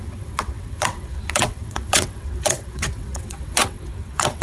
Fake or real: fake